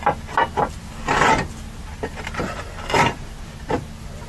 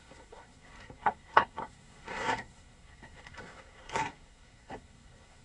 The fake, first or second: second